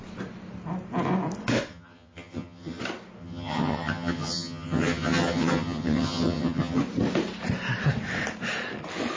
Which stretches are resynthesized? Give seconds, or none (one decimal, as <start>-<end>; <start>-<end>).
1.7-2.8; 3.2-6.8

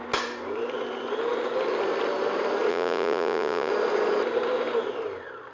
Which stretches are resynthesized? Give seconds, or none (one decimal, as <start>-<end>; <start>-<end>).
2.7-3.7